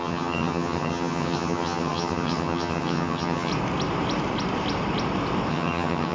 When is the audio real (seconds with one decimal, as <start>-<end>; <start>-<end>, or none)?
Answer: 3.5-5.5